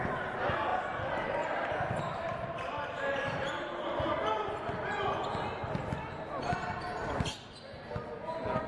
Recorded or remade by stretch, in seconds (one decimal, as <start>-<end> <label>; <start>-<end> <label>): 0.0-8.7 recorded